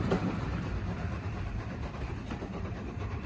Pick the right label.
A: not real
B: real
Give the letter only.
A